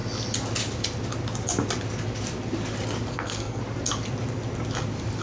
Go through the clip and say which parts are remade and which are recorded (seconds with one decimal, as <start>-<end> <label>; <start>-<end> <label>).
0.0-3.1 recorded; 3.1-3.6 remade; 3.6-5.2 recorded